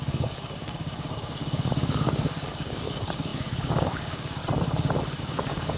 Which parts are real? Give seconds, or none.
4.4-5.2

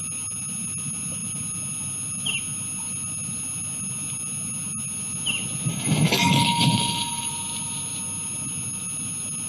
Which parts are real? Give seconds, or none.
0.0-5.7; 7.3-9.5